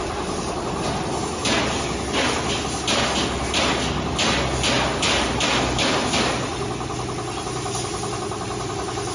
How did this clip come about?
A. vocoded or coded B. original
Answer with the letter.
B